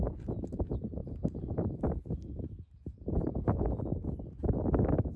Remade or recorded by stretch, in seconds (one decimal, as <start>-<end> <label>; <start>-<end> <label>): 0.0-5.2 recorded